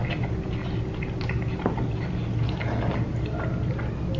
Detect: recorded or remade recorded